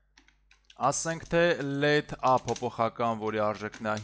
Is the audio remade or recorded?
recorded